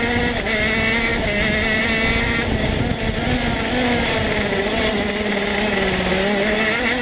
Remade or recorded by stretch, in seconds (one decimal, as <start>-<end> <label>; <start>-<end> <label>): 0.0-7.0 recorded

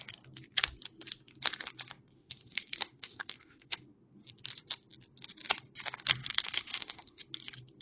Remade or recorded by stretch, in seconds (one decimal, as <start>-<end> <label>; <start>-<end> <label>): 0.0-2.2 recorded; 2.2-3.8 remade; 3.8-6.2 recorded; 6.2-7.2 remade; 7.2-7.8 recorded

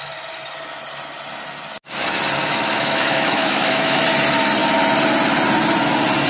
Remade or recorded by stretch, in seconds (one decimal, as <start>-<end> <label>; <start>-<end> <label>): 0.0-2.4 recorded; 2.4-4.0 remade; 4.0-6.3 recorded